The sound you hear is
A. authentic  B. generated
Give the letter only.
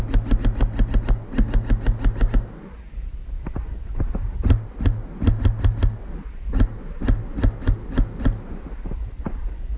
A